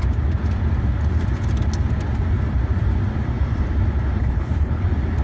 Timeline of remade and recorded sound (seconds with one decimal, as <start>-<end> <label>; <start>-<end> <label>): 0.0-4.2 recorded; 4.2-4.8 remade; 4.8-5.2 recorded